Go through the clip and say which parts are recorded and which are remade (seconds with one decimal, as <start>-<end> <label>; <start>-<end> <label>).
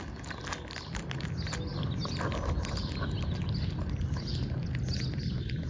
0.0-5.7 recorded